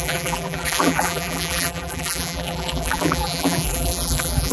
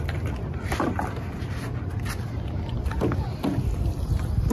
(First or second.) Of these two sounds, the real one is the second